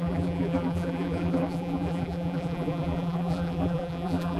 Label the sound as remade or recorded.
remade